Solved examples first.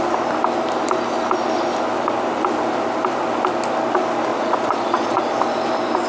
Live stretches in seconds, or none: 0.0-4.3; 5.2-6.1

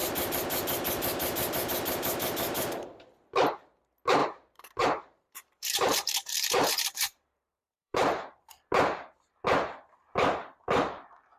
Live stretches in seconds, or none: 3.2-4.2; 8.5-11.4

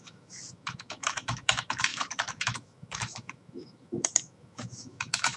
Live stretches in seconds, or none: none

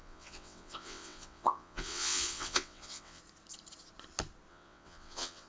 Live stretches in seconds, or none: 3.2-4.5

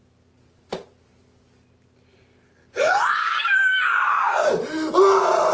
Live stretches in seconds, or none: 0.0-3.2; 4.5-5.5

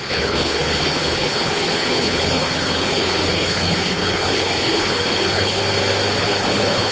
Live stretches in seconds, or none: 5.6-6.2

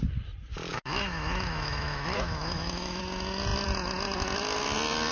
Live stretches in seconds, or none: 0.0-0.7; 3.0-5.1